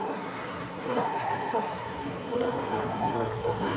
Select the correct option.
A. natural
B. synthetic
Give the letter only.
B